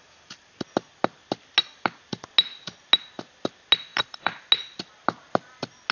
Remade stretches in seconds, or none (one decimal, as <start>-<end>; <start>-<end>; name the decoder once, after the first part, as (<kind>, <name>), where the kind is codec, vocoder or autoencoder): 3.9-4.4 (vocoder, BigVGAN v2)